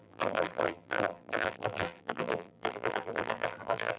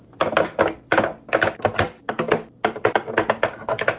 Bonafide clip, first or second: second